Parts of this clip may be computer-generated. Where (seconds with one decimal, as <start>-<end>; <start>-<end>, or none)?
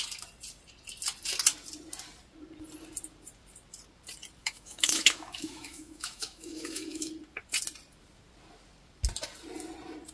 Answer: 4.4-7.1